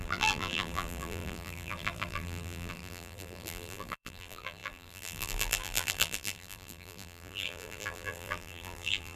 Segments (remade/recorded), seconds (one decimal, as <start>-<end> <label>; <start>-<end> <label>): 0.0-9.2 remade